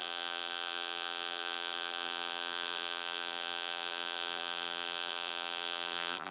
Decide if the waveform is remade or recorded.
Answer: remade